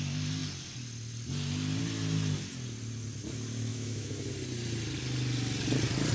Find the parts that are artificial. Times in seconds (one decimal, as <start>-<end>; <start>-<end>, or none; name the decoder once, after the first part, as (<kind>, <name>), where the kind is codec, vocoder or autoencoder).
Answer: 3.7-4.3 (autoencoder, DAC-VAE)